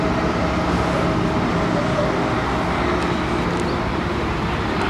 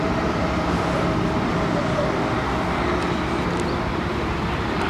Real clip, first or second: first